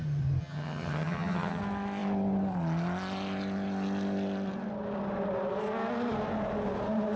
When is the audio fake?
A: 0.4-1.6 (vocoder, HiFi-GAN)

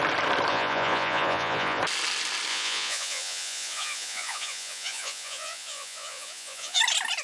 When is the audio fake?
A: 0.5-1.8 (vocoder, Vocos); 2.5-6.8

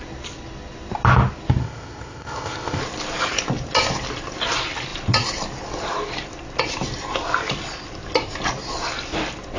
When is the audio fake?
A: 1.6-2.8 (codec, ZipCodec)